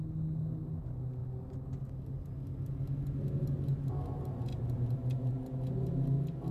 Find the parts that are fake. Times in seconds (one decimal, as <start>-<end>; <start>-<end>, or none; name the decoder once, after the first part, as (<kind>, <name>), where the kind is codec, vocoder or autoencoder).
4.5-5.3 (vocoder, BigVGAN v2)